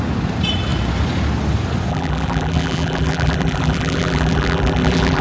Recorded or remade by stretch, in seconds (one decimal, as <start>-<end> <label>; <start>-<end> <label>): 0.0-1.9 recorded; 1.9-5.2 remade